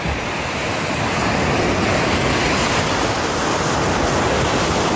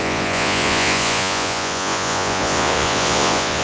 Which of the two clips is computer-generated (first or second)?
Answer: second